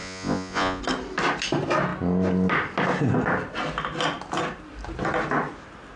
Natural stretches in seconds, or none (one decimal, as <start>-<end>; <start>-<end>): 0.8-6.0